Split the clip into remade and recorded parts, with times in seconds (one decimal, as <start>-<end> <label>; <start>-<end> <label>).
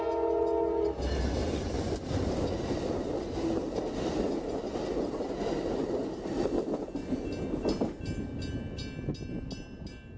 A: 0.0-1.4 recorded; 1.4-2.0 remade; 2.0-10.2 recorded